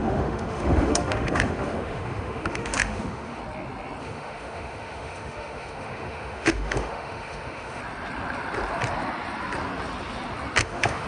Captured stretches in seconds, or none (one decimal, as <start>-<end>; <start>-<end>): 3.4-4.0; 7.8-10.6